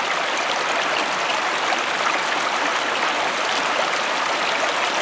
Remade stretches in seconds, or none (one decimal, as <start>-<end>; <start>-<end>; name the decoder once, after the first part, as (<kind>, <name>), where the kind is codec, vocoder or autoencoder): none